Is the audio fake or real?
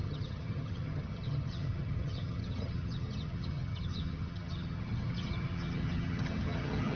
fake